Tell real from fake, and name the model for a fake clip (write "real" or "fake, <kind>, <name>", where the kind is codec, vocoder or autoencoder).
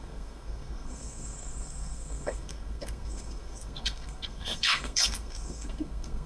fake, codec, SNAC